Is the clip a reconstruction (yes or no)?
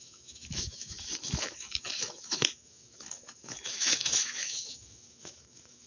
yes